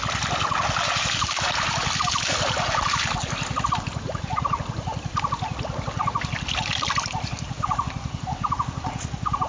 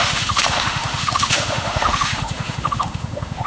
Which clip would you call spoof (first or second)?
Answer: second